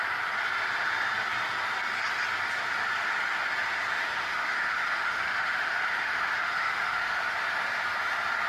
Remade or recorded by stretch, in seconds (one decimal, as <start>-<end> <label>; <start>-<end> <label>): 0.0-3.9 recorded; 3.9-7.2 remade; 7.2-8.5 recorded